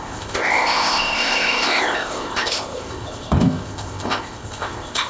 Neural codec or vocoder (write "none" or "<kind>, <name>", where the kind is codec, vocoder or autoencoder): codec, ZipCodec